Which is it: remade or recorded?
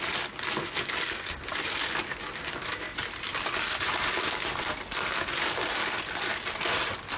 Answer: recorded